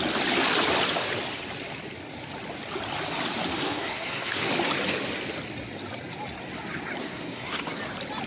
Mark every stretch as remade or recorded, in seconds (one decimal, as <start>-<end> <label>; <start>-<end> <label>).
0.0-3.6 recorded; 3.6-4.5 remade; 4.5-7.0 recorded; 7.0-7.8 remade; 7.8-8.3 recorded